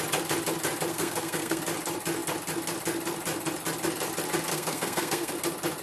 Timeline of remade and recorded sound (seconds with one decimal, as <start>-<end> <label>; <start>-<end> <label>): 0.0-0.9 recorded; 0.9-1.6 remade; 1.6-4.5 recorded; 4.5-5.3 remade; 5.3-5.8 recorded